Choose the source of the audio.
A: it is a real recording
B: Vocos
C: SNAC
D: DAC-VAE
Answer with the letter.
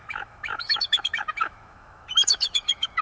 D